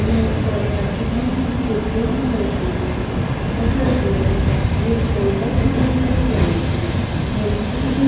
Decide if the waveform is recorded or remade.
recorded